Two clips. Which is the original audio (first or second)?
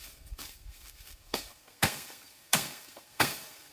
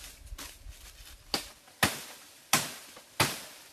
second